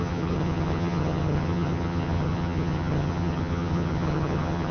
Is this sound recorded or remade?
remade